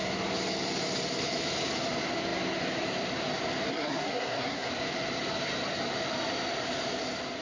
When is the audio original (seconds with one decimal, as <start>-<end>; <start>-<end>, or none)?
0.0-3.7; 4.7-7.4